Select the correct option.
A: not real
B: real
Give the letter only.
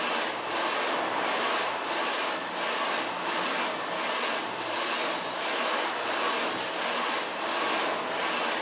B